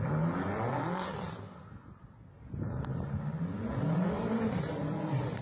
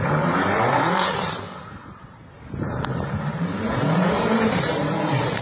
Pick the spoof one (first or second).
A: second